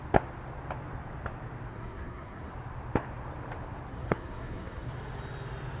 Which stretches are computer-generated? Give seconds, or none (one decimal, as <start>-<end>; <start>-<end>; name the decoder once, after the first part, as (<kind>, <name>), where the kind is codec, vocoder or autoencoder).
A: 1.7-2.5 (codec, SNAC); 3.9-4.9